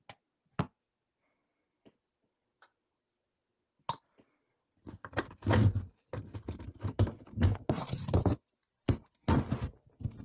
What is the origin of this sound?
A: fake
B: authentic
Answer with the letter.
B